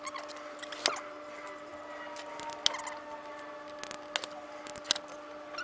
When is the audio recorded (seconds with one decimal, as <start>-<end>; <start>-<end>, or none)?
0.0-5.6